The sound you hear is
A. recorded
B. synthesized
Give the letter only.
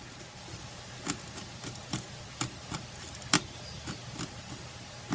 A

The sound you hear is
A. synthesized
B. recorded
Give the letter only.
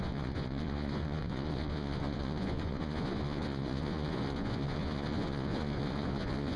A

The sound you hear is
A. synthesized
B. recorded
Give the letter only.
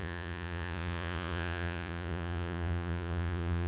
A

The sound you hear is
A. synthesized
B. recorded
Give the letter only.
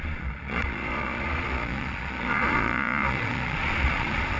A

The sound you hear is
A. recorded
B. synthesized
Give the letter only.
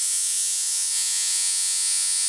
B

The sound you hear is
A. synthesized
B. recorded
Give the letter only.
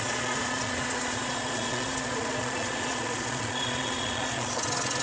A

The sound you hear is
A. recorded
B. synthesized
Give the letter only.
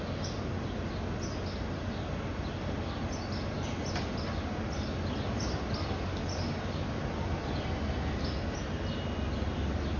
A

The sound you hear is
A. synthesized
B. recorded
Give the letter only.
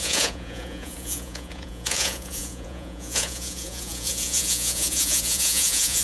A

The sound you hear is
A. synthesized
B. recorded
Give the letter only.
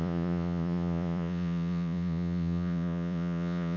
A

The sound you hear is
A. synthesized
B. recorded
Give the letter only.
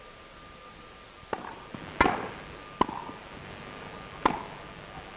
B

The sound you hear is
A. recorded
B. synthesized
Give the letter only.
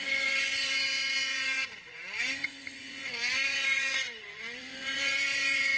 B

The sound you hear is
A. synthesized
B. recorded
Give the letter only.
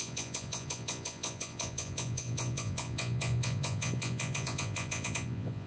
A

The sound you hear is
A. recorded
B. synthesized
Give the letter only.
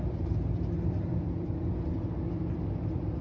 A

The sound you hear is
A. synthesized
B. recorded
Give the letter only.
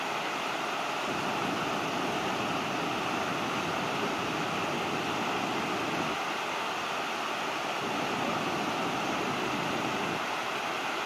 B